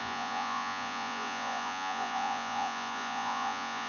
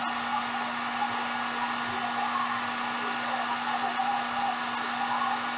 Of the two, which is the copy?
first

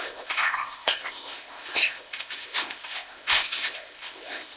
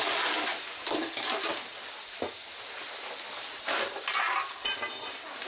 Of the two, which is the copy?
first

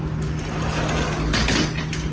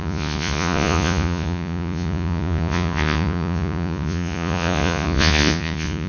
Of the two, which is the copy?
second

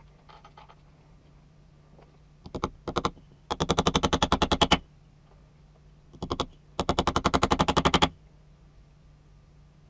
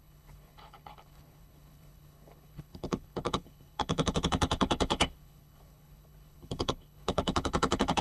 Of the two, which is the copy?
second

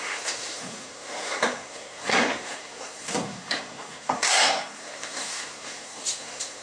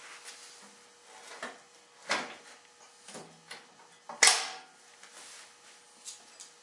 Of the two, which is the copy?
first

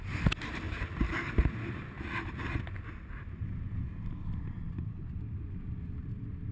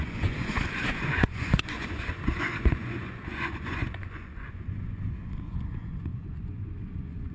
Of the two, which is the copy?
second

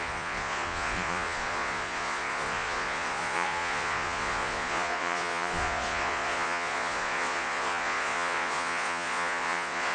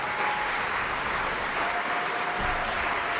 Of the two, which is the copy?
first